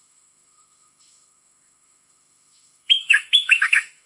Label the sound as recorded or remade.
remade